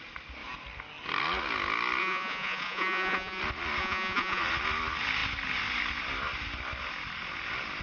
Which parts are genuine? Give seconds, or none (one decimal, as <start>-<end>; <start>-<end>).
0.0-2.0; 3.4-3.8; 4.4-7.8